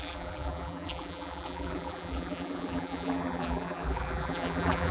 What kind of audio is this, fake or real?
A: fake